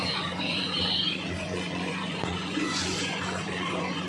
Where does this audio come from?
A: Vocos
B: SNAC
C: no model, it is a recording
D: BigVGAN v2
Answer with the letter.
A